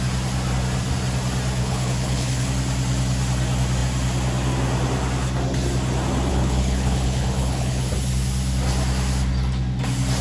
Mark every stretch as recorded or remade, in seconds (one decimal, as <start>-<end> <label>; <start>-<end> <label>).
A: 0.0-1.6 recorded; 1.6-2.5 remade; 2.5-6.3 recorded; 6.3-7.9 remade; 7.9-10.2 recorded